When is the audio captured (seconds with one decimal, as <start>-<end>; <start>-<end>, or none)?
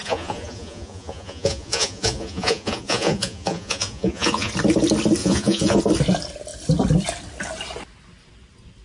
4.5-5.2; 5.8-8.8